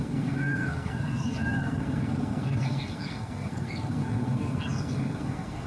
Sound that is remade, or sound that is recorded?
remade